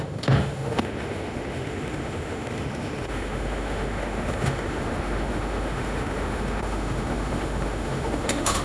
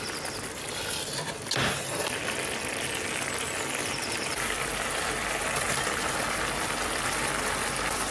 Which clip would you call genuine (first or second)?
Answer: second